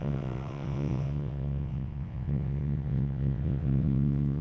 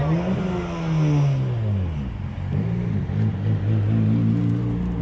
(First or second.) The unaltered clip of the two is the second